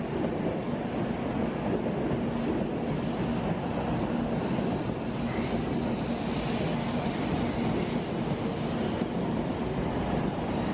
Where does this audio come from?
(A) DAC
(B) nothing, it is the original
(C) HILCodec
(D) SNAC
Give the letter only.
B